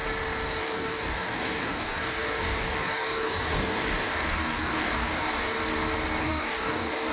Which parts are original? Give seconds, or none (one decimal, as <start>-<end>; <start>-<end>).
0.0-0.6; 5.6-6.2